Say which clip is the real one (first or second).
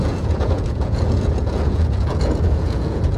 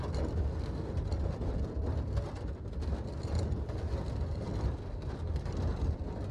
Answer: second